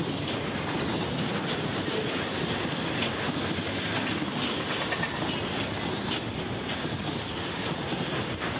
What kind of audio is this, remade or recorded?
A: recorded